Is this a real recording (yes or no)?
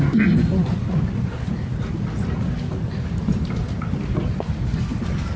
yes